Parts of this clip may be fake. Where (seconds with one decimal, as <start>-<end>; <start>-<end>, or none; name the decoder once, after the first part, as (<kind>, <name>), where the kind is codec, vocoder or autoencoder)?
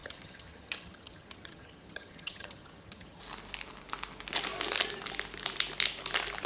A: 0.0-3.2 (vocoder, HiFi-GAN)